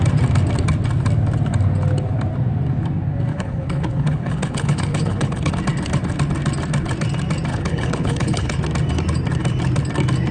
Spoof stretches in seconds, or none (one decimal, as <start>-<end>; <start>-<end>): 3.3-5.5; 7.5-8.6